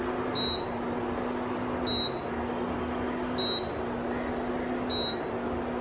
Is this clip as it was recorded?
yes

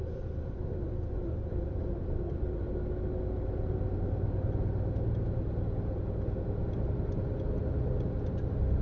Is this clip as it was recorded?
yes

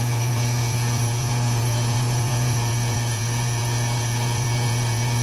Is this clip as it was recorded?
no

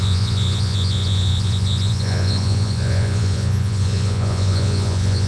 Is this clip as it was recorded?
no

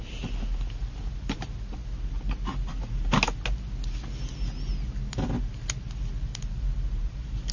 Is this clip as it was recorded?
yes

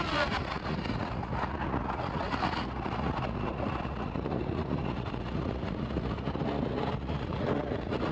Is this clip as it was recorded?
no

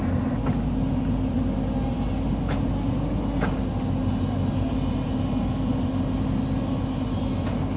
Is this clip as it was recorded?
yes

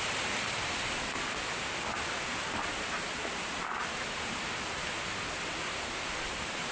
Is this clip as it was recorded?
yes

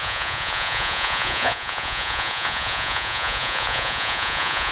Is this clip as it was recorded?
no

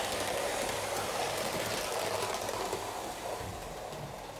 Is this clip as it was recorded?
yes